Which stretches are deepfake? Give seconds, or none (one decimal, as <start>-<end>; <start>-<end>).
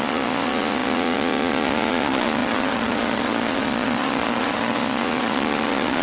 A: 0.0-6.0